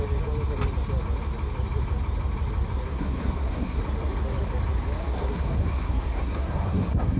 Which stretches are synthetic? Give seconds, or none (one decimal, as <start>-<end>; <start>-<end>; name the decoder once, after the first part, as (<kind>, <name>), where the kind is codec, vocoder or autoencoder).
2.9-3.8 (codec, SNAC); 5.0-7.2